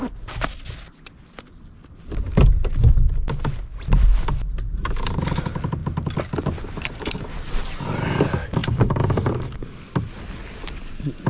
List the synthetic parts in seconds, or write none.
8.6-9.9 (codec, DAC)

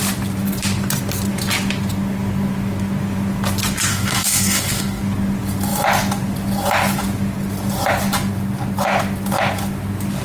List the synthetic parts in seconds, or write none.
3.9-5.0 (codec, DAC)

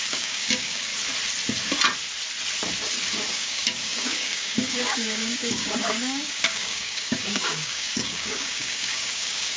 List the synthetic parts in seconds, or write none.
0.0-0.9 (codec, DAC); 3.3-9.6

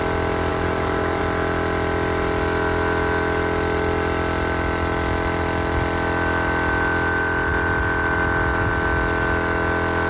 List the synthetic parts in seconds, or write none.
0.5-1.2 (codec, DAC)

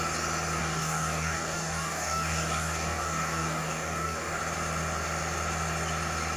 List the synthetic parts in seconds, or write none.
0.6-4.4 (codec, DAC)

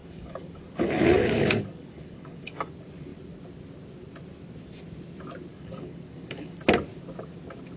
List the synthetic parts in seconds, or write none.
0.0-2.7 (codec, DAC); 5.5-6.6

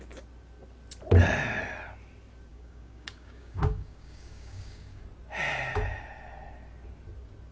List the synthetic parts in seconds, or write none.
2.5-5.0 (codec, DAC)

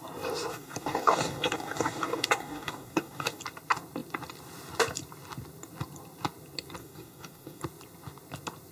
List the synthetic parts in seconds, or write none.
0.5-3.4 (codec, DAC); 6.8-7.6